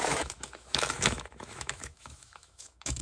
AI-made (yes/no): yes